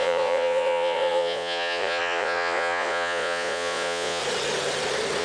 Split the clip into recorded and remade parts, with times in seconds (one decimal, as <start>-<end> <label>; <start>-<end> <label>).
0.0-4.2 remade; 4.2-5.2 recorded